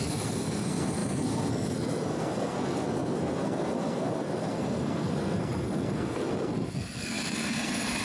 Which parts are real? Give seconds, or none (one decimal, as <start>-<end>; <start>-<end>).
none